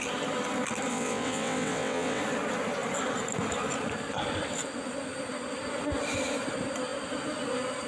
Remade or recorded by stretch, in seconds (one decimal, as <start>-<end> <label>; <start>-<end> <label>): 0.0-0.9 recorded; 0.9-2.2 remade; 2.2-7.9 recorded